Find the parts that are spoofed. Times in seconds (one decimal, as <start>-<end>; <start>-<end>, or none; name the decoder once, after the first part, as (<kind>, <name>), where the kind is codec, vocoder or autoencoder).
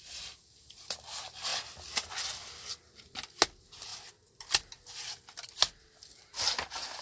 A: none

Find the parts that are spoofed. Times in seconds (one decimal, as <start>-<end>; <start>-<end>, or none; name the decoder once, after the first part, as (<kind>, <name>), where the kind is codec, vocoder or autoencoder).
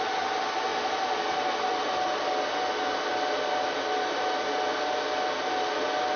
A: none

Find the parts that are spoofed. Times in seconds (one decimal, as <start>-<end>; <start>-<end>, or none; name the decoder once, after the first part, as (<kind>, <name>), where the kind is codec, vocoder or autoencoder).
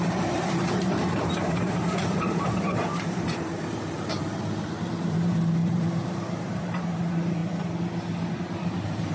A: 0.0-4.2 (vocoder, BigVGAN v2); 5.0-7.4; 8.3-9.1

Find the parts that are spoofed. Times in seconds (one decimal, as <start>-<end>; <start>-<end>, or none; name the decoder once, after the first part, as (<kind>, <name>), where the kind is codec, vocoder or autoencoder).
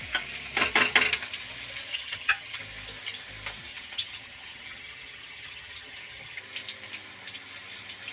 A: 1.9-2.6 (vocoder, HiFi-GAN); 3.7-6.4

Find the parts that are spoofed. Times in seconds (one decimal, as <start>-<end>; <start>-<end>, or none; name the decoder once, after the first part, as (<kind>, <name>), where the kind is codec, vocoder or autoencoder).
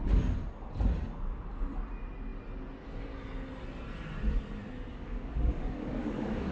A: 4.9-6.5 (codec, DAC)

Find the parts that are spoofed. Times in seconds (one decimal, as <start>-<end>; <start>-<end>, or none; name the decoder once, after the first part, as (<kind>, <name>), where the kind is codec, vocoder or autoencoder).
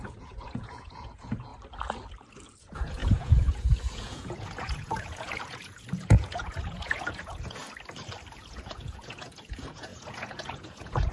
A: 0.0-1.5 (vocoder, Vocos); 2.6-7.6; 8.3-11.1